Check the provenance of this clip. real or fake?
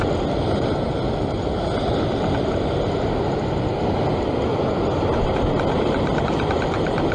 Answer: real